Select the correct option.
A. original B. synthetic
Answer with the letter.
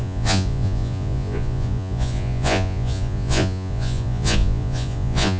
B